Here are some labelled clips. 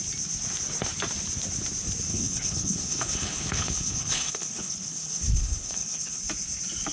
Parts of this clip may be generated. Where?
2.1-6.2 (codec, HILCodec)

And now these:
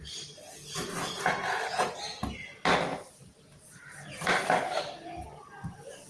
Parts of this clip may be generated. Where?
2.9-4.3 (vocoder, BigVGAN v2)

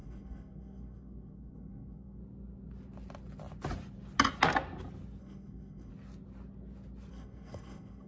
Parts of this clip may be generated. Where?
0.0-2.2 (codec, SNAC); 5.2-5.9; 7.1-8.1

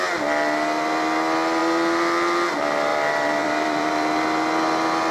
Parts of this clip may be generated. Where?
2.9-4.2 (vocoder, BigVGAN v2)

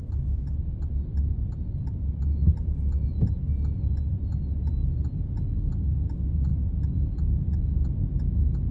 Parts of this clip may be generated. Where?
none

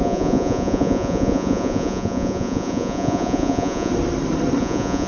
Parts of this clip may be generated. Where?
0.0-3.9 (vocoder, Vocos); 4.6-5.1

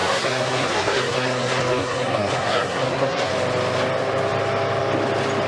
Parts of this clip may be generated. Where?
0.0-3.3 (codec, SNAC)

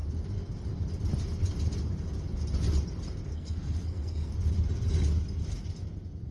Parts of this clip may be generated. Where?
3.3-4.3 (codec, SNAC)